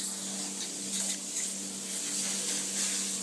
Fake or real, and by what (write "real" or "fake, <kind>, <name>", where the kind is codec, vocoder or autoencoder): real